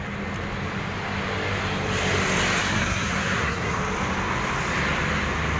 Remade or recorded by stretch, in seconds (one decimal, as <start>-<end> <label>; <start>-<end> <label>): 0.0-2.6 recorded; 2.6-3.8 remade; 3.8-5.6 recorded